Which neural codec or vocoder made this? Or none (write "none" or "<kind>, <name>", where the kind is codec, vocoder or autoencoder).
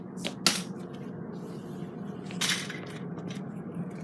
none